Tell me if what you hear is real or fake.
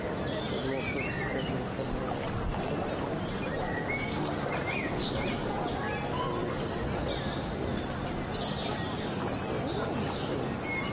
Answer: real